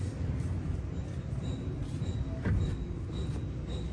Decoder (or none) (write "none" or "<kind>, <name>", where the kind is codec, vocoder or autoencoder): none